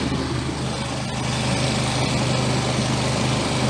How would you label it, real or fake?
real